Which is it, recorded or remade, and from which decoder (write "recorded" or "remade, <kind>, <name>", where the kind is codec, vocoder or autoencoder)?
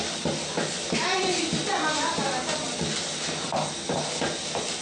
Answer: recorded